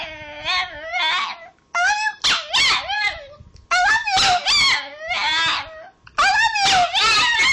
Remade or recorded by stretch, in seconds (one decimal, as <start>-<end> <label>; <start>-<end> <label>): 0.0-7.5 recorded